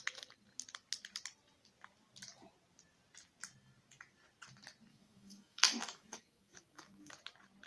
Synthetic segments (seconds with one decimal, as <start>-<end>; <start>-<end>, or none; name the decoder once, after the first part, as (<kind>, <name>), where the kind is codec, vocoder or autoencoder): 4.9-7.1 (autoencoder, DAC-VAE)